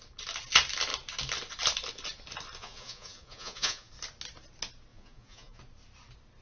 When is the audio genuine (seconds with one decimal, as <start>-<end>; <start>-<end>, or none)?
0.0-2.6; 3.9-4.9; 5.6-6.4